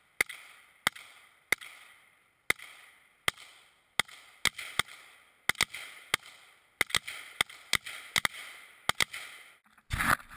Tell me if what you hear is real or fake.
real